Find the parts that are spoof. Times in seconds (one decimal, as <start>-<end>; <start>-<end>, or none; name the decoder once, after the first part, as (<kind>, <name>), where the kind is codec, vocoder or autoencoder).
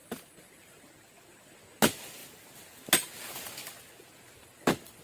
none